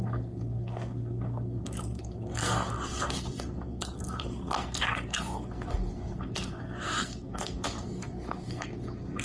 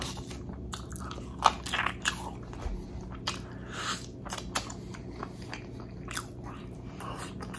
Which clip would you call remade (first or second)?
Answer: first